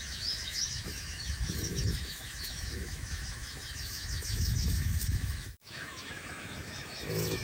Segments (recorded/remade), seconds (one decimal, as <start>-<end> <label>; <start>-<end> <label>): 0.0-7.4 remade